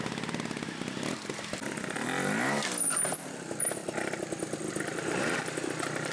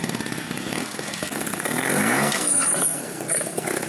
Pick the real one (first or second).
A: first